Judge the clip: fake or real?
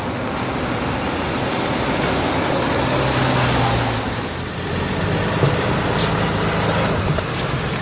real